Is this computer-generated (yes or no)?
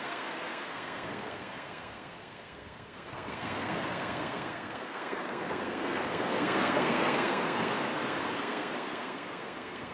yes